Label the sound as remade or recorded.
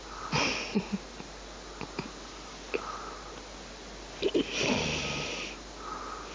recorded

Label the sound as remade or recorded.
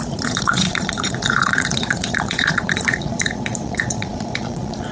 remade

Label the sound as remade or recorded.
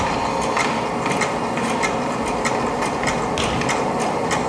recorded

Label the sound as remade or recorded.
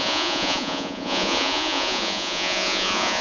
remade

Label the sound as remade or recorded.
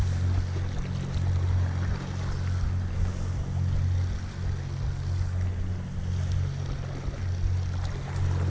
recorded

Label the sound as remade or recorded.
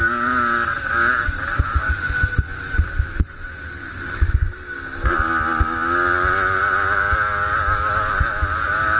recorded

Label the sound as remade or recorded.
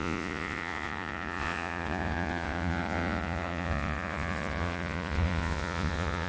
remade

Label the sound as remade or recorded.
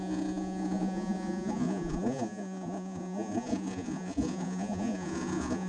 remade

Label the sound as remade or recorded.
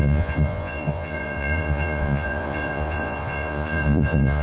remade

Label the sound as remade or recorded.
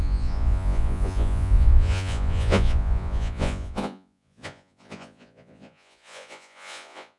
remade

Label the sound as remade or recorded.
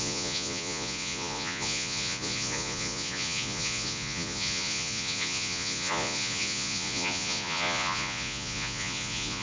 remade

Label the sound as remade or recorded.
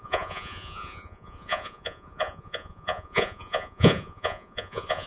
remade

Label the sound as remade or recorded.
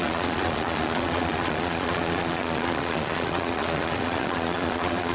remade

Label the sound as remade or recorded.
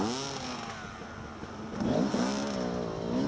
recorded